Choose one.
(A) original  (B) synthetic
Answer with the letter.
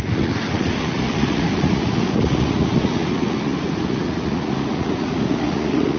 B